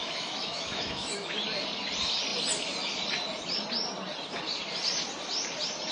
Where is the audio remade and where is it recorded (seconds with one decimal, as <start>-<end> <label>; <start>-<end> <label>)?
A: 0.0-1.4 remade; 1.4-5.9 recorded